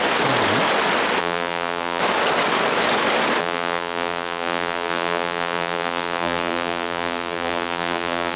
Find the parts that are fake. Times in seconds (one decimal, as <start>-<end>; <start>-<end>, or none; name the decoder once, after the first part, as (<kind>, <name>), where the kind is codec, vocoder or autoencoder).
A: 1.2-2.0 (vocoder, BigVGAN v2); 3.4-8.4